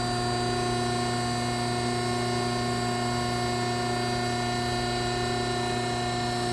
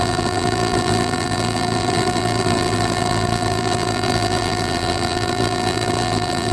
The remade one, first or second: second